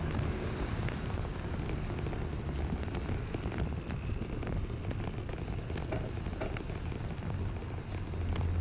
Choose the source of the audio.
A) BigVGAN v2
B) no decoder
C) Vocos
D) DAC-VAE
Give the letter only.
B